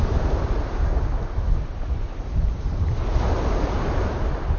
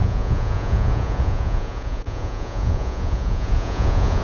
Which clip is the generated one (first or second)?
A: second